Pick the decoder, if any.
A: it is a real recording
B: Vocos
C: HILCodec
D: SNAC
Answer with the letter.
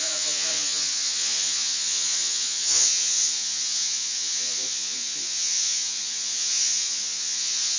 B